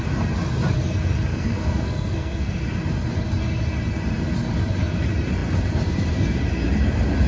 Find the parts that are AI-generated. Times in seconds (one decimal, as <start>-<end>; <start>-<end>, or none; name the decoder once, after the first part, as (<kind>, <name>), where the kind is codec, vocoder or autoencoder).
1.3-2.6 (codec, SNAC)